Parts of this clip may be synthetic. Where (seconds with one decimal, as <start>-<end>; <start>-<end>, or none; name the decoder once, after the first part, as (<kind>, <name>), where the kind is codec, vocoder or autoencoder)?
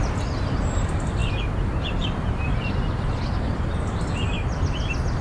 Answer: 1.2-4.1 (vocoder, BigVGAN v2)